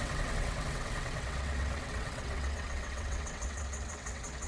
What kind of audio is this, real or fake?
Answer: fake